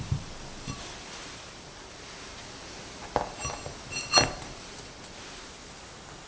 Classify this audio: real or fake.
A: real